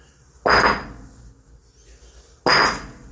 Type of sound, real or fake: real